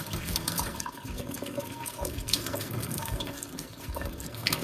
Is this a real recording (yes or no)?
no